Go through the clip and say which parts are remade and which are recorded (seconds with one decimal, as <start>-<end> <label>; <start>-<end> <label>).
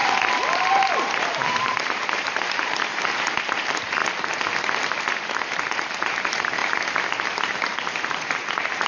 0.0-0.7 recorded; 0.7-4.0 remade; 4.0-5.7 recorded; 5.7-6.6 remade; 6.6-7.3 recorded; 7.3-8.9 remade